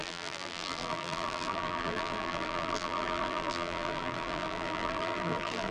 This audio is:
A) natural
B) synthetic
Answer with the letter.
B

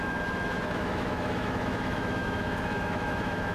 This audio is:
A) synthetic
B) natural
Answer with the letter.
A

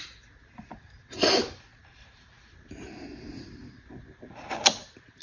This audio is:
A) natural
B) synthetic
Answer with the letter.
A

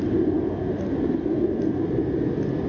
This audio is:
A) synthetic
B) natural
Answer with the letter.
B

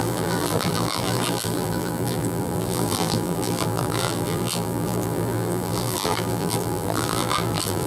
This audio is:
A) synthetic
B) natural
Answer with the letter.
A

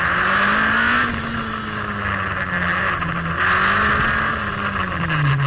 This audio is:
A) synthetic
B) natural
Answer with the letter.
B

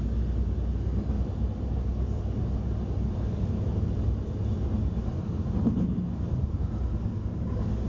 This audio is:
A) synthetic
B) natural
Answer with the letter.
B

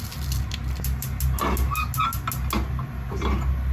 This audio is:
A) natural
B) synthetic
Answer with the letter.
A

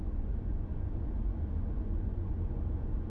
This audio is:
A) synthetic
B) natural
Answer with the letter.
A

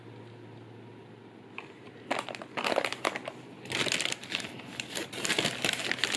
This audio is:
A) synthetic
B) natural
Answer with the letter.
B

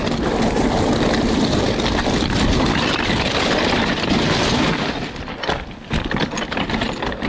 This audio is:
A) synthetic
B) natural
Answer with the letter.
B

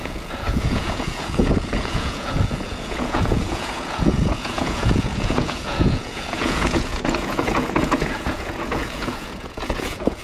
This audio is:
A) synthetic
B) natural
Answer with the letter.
A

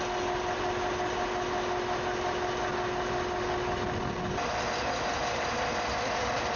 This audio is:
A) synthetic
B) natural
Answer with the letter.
B